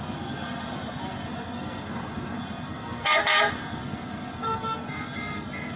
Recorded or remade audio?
remade